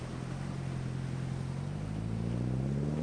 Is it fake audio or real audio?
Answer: real